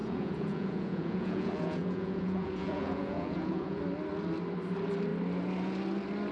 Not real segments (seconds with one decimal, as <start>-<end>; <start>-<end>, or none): 0.0-3.8